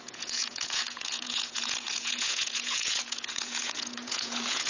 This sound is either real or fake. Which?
fake